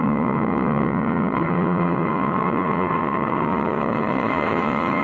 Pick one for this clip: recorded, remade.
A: remade